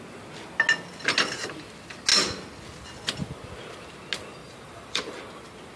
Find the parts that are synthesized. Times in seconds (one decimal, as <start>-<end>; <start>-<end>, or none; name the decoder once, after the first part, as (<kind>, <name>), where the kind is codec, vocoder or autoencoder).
4.4-5.2 (vocoder, BigVGAN v2)